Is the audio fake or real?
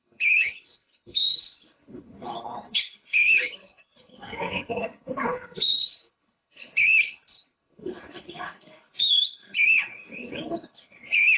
fake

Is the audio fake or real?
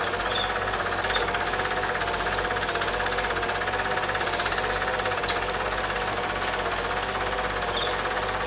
real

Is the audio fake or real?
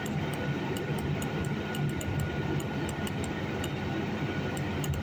fake